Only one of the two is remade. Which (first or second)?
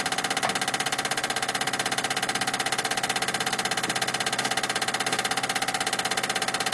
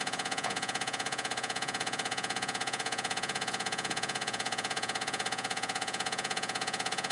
second